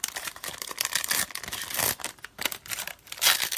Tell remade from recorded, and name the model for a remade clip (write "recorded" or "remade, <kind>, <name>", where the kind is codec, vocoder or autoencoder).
recorded